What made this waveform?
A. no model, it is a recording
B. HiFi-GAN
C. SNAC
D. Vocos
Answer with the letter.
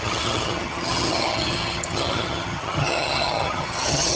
B